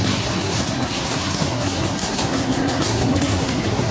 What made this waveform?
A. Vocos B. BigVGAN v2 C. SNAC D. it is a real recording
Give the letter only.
C